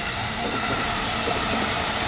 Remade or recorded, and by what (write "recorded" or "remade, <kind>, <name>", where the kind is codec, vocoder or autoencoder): remade, vocoder, BigVGAN v2